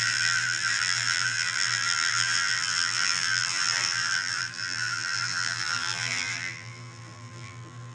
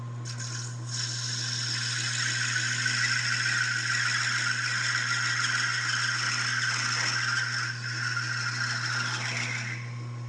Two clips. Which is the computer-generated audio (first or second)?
first